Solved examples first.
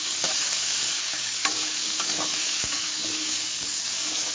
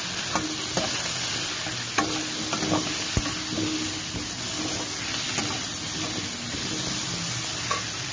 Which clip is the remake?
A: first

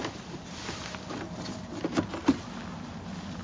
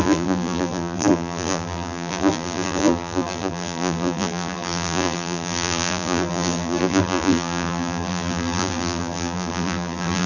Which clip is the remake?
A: second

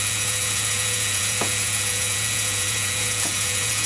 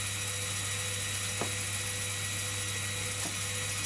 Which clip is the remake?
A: first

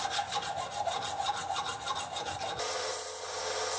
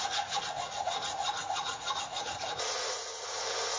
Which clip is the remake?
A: second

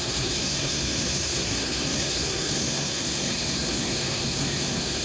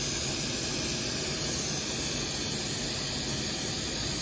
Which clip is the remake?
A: first